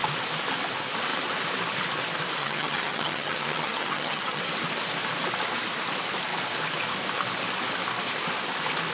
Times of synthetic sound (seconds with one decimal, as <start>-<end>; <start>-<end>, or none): 2.4-4.4